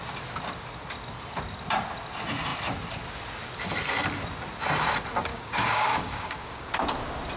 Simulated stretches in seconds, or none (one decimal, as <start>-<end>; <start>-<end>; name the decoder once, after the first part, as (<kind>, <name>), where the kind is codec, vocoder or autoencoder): 5.3-6.7 (codec, DAC)